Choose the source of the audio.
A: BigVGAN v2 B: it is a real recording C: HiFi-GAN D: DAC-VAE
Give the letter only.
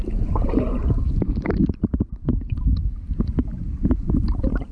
A